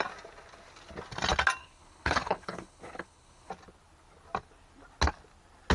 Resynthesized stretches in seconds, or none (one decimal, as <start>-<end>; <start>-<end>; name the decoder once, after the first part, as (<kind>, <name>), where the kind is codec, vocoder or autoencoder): 1.6-3.5 (codec, HILCodec)